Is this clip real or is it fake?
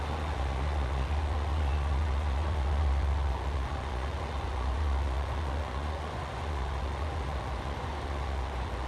fake